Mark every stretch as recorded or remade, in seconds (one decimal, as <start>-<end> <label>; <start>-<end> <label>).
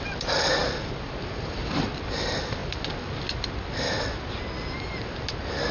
0.0-5.7 recorded